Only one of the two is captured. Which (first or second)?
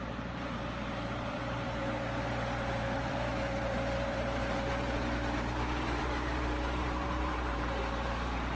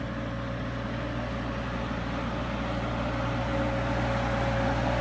second